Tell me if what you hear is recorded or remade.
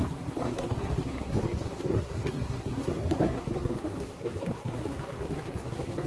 remade